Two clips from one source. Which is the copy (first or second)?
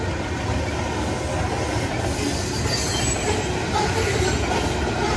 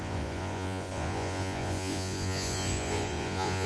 second